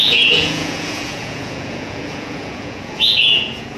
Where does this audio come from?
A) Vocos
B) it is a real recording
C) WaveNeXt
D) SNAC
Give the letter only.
A